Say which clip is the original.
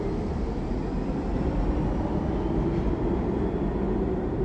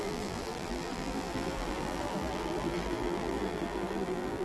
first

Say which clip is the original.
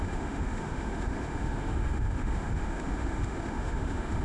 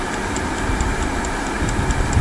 second